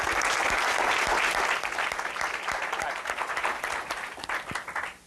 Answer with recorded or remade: recorded